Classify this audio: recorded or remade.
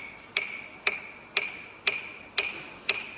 recorded